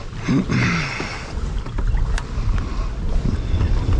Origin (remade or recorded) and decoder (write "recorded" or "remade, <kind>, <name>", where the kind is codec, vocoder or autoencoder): recorded